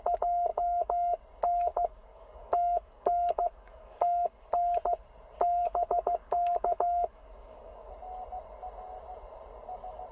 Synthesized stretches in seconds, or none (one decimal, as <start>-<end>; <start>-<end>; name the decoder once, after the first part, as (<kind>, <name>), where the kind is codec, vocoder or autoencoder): 0.5-1.2 (codec, DAC); 1.7-4.5; 5.6-7.9